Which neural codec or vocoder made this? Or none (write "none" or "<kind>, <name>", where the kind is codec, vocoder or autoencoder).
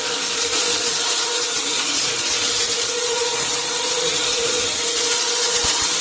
vocoder, Vocos